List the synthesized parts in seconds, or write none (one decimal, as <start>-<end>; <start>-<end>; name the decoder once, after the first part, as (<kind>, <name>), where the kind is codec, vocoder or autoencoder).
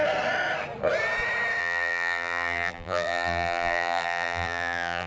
1.6-5.1 (vocoder, BigVGAN v2)